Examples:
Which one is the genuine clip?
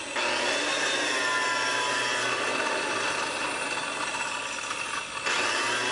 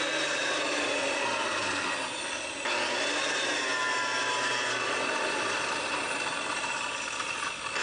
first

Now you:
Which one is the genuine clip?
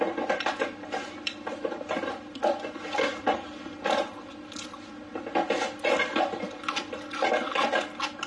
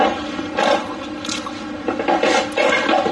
first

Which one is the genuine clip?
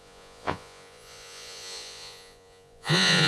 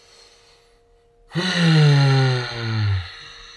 second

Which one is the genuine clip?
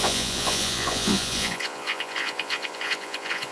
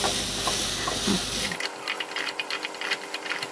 second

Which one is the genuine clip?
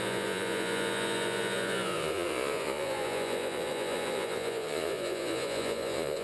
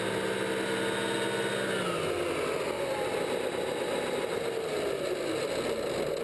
second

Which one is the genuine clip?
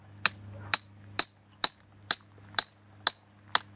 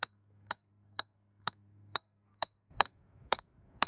first